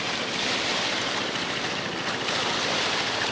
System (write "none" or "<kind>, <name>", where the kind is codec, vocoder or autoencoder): none